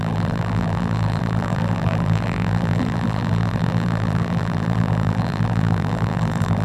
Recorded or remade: remade